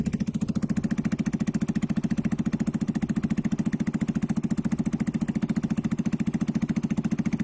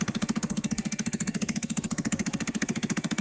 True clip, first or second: first